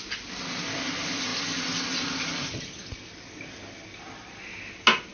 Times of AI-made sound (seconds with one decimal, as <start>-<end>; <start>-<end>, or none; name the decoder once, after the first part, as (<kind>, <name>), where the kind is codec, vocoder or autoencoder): none